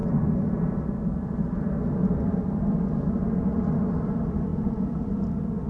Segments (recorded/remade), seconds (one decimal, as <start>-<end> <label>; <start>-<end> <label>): 0.0-4.5 recorded; 4.5-5.0 remade; 5.0-5.7 recorded